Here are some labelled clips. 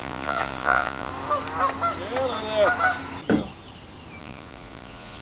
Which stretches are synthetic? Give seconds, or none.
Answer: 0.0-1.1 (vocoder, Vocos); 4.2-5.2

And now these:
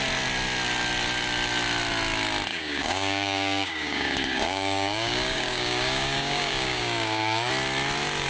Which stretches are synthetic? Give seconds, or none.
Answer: 2.5-7.5 (codec, DAC)

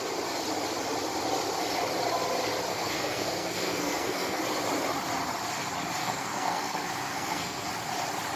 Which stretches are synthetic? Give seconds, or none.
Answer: 2.7-4.4 (codec, SNAC); 6.0-7.7

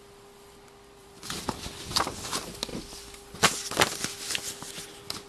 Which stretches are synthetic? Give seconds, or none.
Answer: 1.0-1.5 (vocoder, BigVGAN v2)